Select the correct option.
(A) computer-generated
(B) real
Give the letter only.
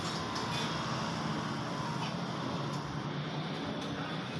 B